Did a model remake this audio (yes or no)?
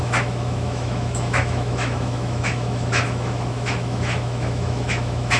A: yes